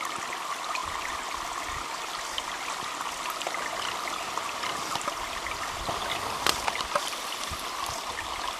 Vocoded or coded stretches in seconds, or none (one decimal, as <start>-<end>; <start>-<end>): none